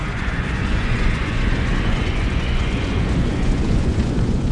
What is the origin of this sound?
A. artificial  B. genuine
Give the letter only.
A